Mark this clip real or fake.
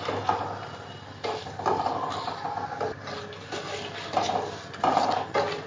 real